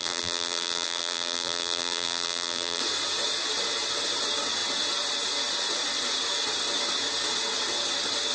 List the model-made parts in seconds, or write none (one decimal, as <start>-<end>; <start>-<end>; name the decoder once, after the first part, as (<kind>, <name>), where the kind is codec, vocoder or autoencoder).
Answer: 0.0-2.8 (vocoder, BigVGAN v2)